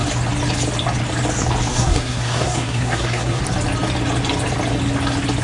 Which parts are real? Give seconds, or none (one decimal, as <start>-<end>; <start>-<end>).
0.0-1.7; 3.4-5.4